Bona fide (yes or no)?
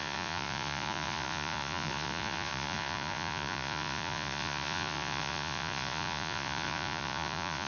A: no